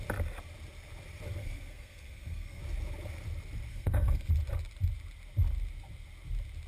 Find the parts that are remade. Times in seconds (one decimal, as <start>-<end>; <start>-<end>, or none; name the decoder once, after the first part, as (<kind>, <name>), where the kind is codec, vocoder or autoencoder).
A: 1.4-2.6 (codec, SNAC); 3.7-4.3